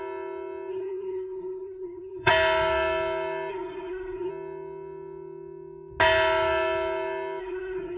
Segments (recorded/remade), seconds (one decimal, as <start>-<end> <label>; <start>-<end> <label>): 0.0-0.7 recorded; 0.7-2.3 remade; 2.3-3.5 recorded; 3.5-4.3 remade; 4.3-7.4 recorded; 7.4-8.0 remade